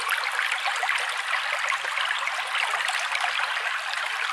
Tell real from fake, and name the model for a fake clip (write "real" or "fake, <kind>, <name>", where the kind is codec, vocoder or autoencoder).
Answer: real